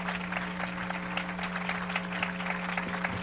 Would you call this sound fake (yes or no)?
no